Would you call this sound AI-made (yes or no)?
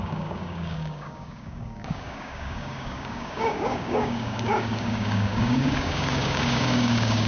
yes